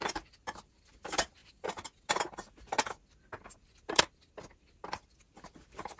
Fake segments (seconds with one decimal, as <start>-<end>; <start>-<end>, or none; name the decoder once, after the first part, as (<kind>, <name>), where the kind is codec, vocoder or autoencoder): none

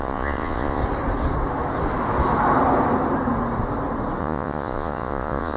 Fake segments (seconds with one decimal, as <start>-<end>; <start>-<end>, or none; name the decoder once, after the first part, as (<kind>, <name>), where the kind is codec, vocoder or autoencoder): 0.0-0.8 (vocoder, Vocos); 4.2-5.6

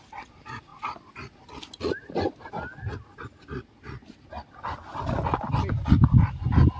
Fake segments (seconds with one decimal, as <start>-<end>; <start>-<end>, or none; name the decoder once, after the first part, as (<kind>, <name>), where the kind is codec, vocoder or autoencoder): none